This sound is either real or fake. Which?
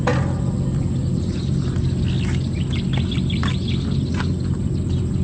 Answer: real